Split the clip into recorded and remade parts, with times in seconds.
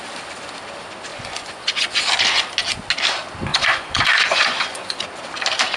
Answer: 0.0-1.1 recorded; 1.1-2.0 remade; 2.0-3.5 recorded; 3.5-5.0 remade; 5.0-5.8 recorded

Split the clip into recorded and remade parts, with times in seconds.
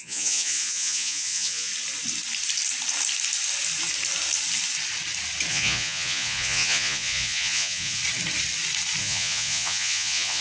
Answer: 0.0-1.7 remade; 1.7-5.5 recorded; 5.5-8.0 remade; 8.0-9.0 recorded; 9.0-10.4 remade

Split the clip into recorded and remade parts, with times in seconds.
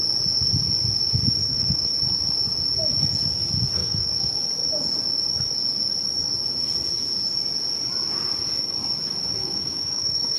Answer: 0.0-1.4 recorded; 1.4-2.0 remade; 2.0-3.8 recorded; 3.8-4.3 remade; 4.3-9.4 recorded; 9.4-10.4 remade